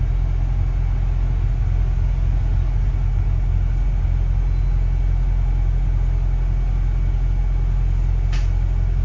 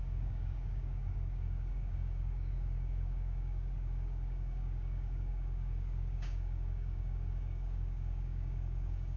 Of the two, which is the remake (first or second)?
second